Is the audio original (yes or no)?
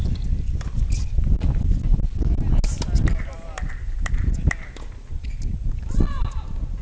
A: yes